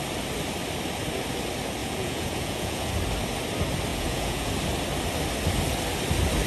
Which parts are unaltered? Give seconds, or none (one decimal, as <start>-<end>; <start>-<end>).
0.0-1.8; 2.9-3.9; 4.5-6.5